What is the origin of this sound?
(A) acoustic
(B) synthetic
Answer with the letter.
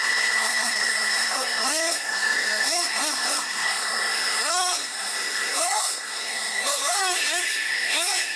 B